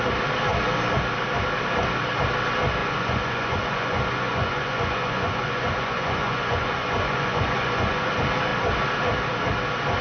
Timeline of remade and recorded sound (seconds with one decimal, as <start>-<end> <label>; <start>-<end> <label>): 0.0-2.8 recorded; 2.8-8.1 remade; 8.1-10.0 recorded